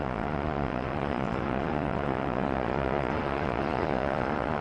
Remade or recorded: remade